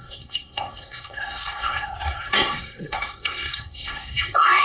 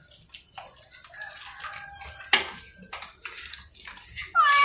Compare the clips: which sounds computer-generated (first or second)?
first